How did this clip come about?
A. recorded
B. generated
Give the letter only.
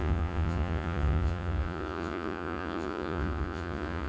B